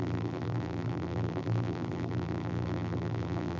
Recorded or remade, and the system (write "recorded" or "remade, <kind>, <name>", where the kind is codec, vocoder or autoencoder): remade, vocoder, BigVGAN v2